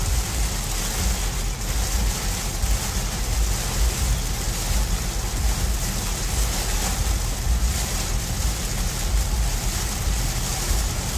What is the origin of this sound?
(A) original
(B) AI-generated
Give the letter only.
A